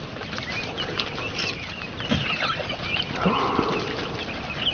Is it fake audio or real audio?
real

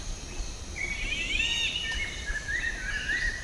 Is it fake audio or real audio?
fake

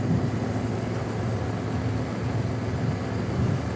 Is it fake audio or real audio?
real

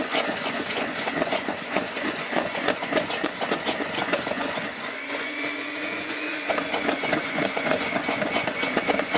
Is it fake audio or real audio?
fake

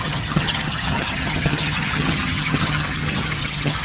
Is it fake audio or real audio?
fake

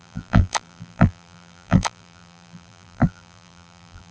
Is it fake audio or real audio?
fake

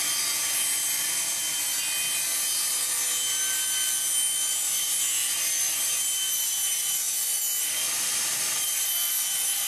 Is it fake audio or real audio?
real